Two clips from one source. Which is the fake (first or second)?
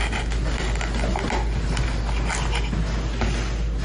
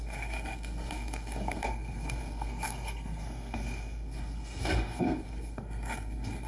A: second